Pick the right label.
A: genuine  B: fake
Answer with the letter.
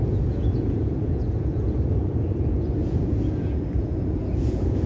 B